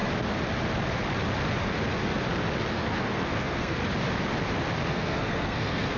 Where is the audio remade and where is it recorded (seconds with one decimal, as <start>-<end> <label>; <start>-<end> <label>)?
0.0-2.7 recorded; 2.7-3.8 remade; 3.8-4.9 recorded; 4.9-6.0 remade